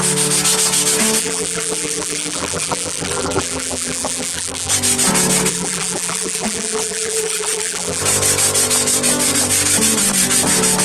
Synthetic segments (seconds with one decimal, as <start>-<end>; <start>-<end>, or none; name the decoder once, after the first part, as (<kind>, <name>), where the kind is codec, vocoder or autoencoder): 1.2-4.7 (vocoder, BigVGAN v2); 5.5-8.0